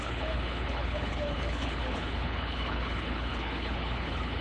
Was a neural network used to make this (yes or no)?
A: yes